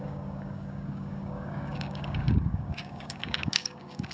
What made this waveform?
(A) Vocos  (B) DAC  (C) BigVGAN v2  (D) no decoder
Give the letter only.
B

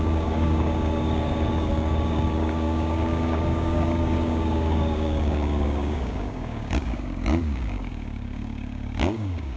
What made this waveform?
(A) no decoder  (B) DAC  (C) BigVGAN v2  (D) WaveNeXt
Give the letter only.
B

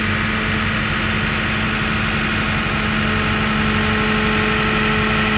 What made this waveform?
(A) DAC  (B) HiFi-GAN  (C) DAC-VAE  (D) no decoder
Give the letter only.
D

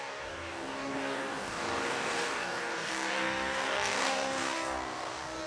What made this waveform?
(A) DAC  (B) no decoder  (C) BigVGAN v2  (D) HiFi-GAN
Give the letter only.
A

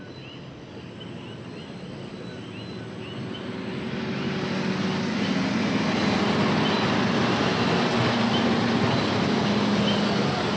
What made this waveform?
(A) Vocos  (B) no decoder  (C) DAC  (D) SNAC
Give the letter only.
B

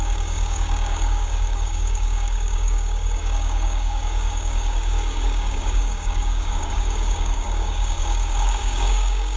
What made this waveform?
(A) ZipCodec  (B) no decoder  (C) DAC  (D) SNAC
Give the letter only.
C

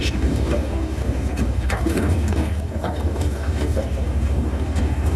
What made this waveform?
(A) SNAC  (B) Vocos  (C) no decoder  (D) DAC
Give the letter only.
D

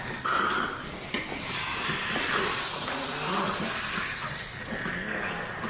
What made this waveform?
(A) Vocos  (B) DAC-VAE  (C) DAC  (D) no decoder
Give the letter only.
D